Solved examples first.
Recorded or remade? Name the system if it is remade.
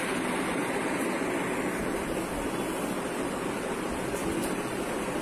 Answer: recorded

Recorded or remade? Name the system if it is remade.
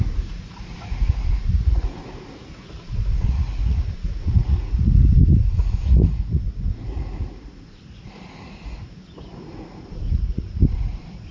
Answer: remade, vocoder, Vocos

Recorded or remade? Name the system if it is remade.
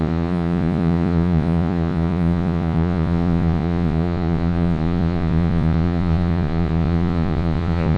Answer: remade, vocoder, Vocos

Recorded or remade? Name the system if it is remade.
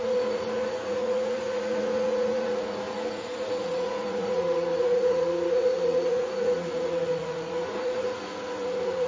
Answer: remade, vocoder, Vocos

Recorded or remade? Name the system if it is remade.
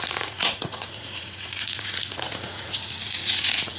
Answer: remade, vocoder, Vocos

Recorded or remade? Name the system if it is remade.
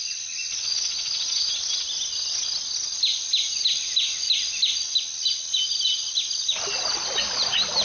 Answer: recorded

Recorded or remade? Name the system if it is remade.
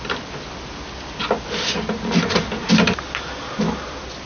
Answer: recorded